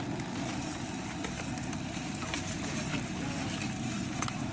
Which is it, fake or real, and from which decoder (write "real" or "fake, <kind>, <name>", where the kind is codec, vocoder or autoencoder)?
real